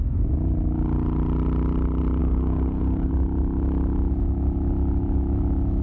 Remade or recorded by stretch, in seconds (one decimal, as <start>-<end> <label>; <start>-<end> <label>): 0.0-2.2 recorded; 2.2-3.1 remade; 3.1-5.8 recorded